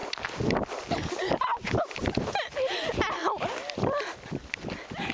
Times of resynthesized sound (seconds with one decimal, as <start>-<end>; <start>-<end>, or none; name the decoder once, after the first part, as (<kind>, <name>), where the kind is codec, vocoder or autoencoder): none